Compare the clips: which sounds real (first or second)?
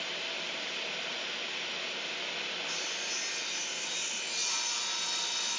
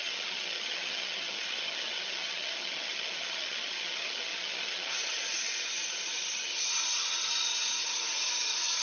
first